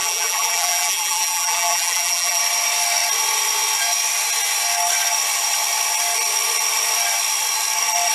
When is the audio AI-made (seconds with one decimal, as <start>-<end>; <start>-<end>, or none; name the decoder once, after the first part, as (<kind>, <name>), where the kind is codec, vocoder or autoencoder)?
0.0-2.4 (vocoder, BigVGAN v2)